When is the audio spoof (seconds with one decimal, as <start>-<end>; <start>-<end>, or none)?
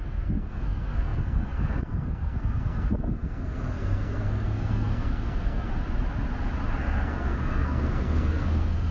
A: 0.0-5.7; 6.8-8.9